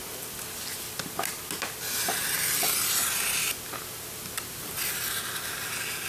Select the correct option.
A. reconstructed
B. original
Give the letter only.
B